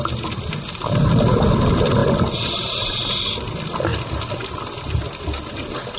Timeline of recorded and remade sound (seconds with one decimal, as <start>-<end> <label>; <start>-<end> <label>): 0.0-6.0 recorded